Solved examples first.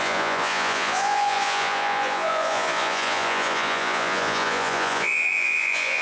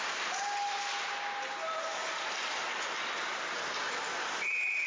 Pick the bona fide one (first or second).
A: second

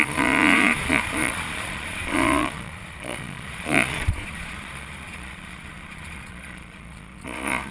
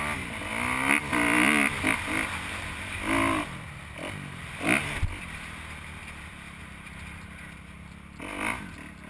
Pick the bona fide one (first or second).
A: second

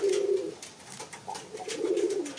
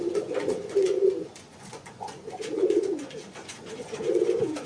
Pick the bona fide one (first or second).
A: first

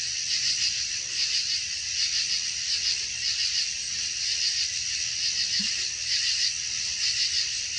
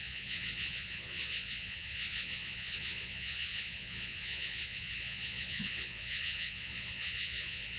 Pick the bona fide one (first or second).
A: first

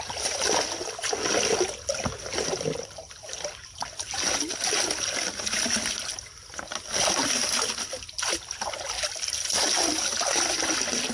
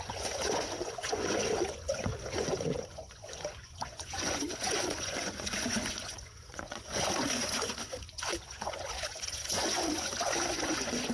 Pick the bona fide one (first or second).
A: first